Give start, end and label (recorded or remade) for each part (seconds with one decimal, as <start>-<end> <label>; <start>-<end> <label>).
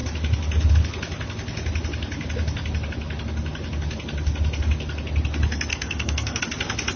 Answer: 0.0-5.7 recorded; 5.7-6.4 remade; 6.4-7.0 recorded